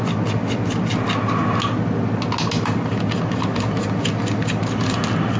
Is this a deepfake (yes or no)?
no